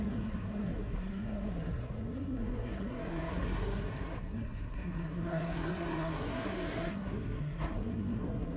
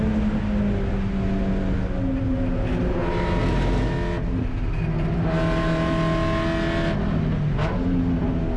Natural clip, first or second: second